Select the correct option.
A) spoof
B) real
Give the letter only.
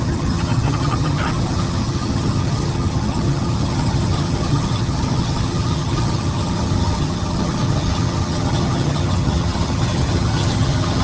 A